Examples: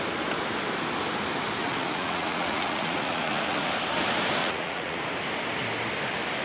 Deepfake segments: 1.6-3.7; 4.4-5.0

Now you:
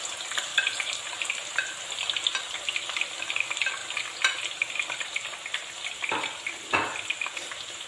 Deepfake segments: none

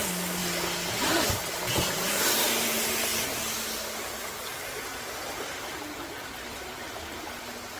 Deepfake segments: none

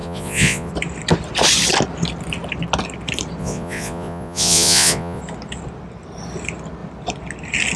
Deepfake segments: 0.0-0.7; 3.4-5.2

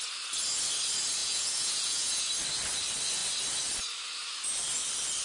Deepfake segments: 1.2-2.3

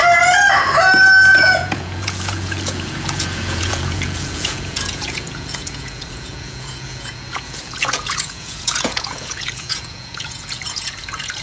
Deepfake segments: 1.3-11.4

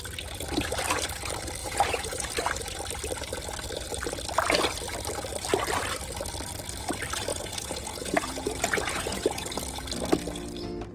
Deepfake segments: 1.6-2.3; 7.3-9.6